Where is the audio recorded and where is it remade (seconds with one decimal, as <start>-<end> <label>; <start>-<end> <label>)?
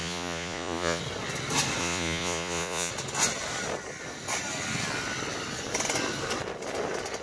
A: 0.0-1.0 remade; 1.0-1.8 recorded; 1.8-2.9 remade; 2.9-7.2 recorded